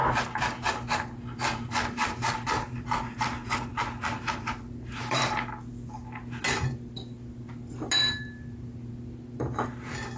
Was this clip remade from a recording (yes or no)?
no